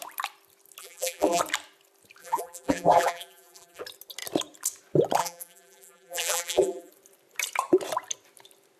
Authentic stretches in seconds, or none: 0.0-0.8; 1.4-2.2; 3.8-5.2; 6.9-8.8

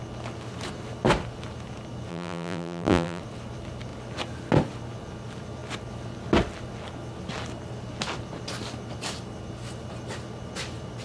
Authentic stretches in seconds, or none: 0.0-2.1; 3.2-11.0

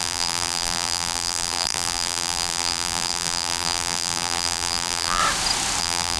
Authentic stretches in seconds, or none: 5.2-5.8

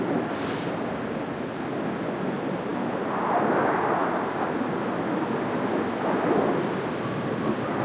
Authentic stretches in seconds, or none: 0.0-7.8

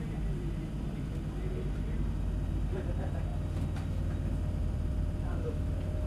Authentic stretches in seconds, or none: 3.3-4.6